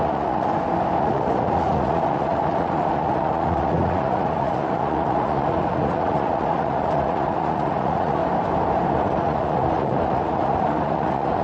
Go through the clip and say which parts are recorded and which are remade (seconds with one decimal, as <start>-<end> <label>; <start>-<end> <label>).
0.0-0.5 remade; 0.5-1.0 recorded; 1.0-8.2 remade; 8.2-8.9 recorded; 8.9-11.4 remade